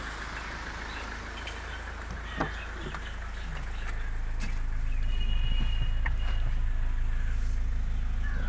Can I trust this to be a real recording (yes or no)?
yes